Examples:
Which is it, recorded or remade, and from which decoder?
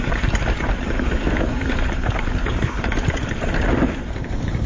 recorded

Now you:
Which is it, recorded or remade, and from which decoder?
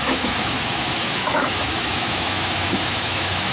remade, autoencoder, DAC-VAE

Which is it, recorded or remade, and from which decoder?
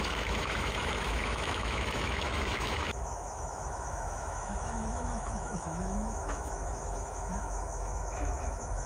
remade, autoencoder, DAC-VAE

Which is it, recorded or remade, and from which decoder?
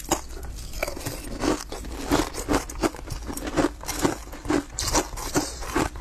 recorded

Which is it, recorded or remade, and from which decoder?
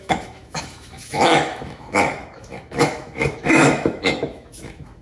remade, autoencoder, DAC-VAE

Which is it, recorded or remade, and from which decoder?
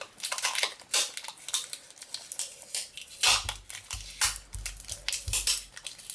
recorded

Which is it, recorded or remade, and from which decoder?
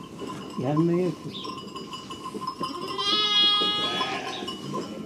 recorded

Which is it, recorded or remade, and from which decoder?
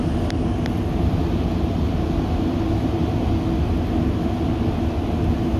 recorded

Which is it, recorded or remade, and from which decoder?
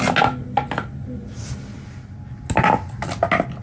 recorded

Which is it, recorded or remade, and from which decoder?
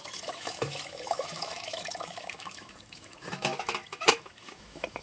remade, autoencoder, DAC-VAE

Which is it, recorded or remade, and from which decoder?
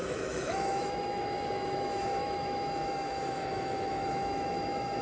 remade, autoencoder, DAC-VAE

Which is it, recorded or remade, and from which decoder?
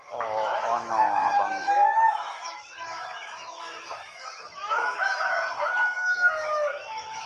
remade, autoencoder, DAC-VAE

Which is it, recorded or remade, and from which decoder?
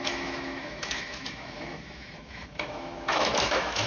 remade, autoencoder, DAC-VAE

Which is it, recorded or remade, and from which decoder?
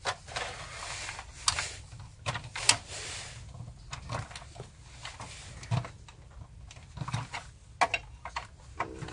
recorded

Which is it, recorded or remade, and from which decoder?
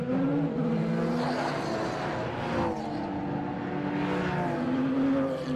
recorded